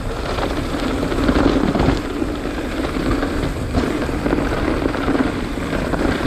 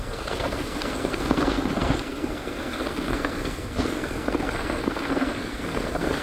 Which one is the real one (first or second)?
first